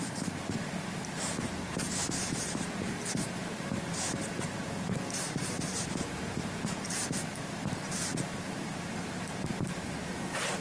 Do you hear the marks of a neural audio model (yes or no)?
yes